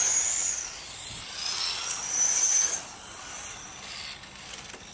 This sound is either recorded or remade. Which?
recorded